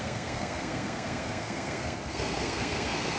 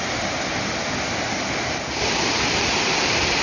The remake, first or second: first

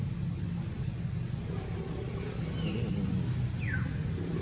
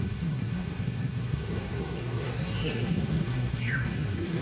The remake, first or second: second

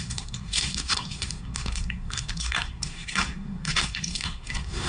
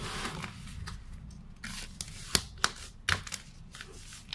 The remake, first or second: first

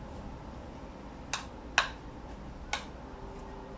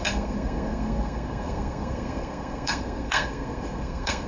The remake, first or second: second